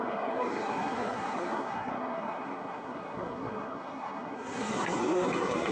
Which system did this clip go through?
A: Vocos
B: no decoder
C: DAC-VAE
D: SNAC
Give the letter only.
D